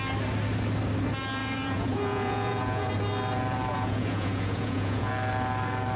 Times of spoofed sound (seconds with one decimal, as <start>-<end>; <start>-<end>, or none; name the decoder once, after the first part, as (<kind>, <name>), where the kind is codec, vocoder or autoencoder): 1.4-2.9 (vocoder, Vocos); 3.7-5.1

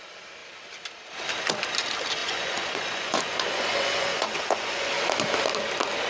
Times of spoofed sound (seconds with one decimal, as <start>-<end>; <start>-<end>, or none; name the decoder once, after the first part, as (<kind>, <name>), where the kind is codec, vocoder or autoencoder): 2.2-4.9 (vocoder, Vocos)

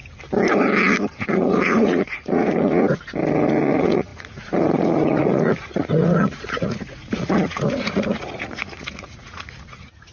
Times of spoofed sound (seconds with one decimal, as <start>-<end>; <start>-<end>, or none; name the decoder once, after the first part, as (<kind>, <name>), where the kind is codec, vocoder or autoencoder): 1.3-2.9 (vocoder, Vocos); 3.5-10.1

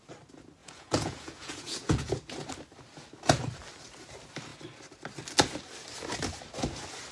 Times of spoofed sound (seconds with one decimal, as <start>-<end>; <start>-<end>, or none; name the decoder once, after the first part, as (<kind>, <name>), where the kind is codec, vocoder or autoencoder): 0.6-2.1 (vocoder, Vocos)